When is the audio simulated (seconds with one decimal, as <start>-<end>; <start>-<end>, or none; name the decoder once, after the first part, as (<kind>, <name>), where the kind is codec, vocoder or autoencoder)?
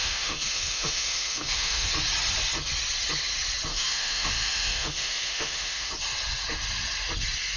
0.0-1.9 (autoencoder, DAC-VAE); 3.7-5.9